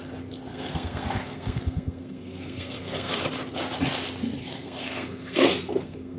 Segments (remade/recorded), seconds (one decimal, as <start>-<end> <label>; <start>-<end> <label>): 0.0-0.5 recorded; 0.5-3.2 remade; 3.2-4.4 recorded; 4.4-6.2 remade